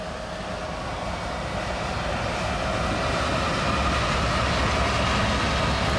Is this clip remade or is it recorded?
recorded